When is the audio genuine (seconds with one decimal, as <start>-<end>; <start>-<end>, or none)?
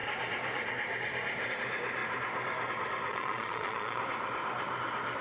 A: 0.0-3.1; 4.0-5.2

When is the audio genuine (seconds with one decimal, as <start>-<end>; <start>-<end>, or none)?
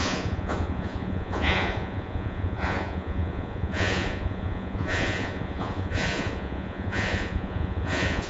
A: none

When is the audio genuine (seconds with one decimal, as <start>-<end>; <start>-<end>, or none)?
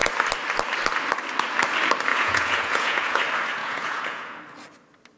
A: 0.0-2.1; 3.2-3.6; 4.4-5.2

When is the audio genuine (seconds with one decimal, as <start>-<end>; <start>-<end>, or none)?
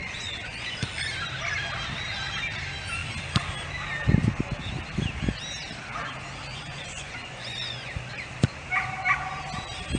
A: 0.8-6.5; 7.9-10.0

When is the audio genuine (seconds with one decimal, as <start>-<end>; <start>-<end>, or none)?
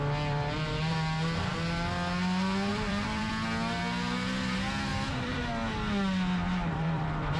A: 0.0-2.7; 3.3-4.9; 5.4-6.4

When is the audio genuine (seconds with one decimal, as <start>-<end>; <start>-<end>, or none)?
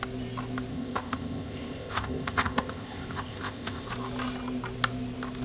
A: 0.0-0.7; 3.9-5.4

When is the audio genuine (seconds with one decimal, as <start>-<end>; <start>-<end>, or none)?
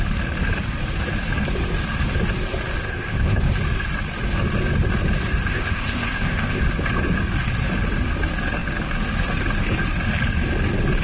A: 0.0-2.8; 3.4-5.5; 6.6-11.0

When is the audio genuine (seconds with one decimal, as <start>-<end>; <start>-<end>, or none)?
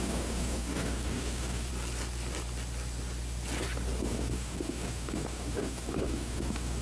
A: 1.7-4.1